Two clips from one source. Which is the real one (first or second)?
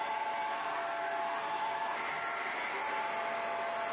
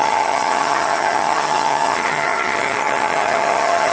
first